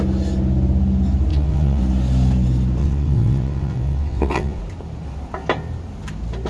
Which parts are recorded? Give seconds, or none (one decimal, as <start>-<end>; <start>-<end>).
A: 0.0-1.3; 1.8-2.8; 4.6-6.5